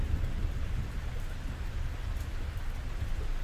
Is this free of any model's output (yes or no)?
yes